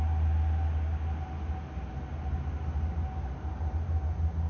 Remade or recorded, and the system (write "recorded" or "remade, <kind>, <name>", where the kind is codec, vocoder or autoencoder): recorded